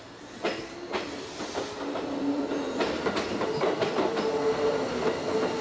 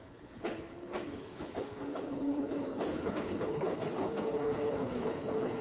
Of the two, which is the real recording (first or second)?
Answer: first